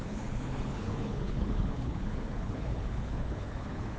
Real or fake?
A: fake